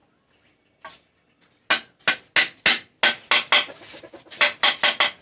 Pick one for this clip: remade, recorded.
recorded